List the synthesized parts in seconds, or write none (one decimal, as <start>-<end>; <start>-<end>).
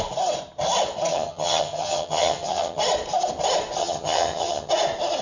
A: 1.1-2.8; 3.8-4.7